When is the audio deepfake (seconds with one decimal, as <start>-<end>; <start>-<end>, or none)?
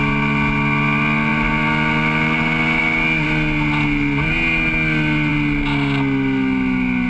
none